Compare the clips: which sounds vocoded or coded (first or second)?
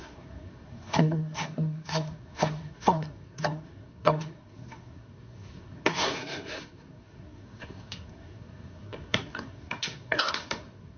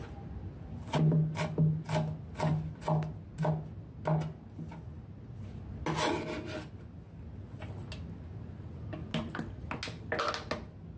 first